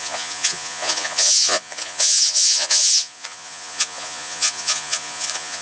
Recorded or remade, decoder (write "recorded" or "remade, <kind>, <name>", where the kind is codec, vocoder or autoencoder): remade, vocoder, Vocos